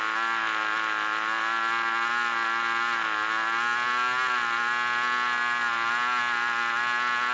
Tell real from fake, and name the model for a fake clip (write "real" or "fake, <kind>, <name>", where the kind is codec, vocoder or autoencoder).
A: real